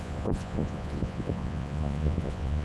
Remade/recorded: remade